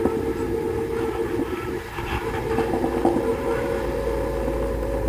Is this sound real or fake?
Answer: real